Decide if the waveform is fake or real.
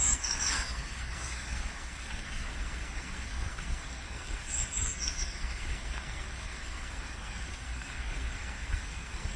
fake